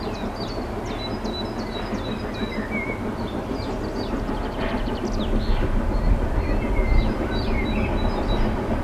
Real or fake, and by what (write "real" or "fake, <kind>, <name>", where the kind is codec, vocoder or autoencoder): real